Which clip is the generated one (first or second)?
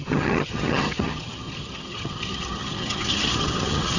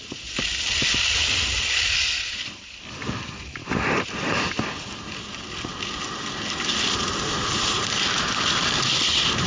first